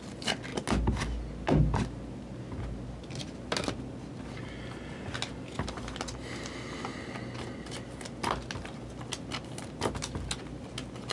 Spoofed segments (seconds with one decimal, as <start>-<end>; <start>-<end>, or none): none